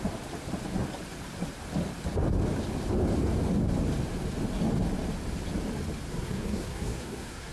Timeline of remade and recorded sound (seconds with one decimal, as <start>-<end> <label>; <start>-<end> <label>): 0.0-6.1 recorded; 6.1-7.5 remade